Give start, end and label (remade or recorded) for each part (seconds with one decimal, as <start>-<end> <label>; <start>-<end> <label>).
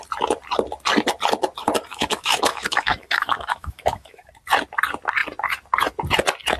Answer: 0.0-1.9 recorded; 1.9-4.3 remade; 4.3-6.6 recorded